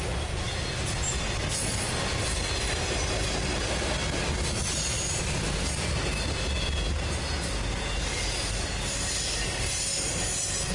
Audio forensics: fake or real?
real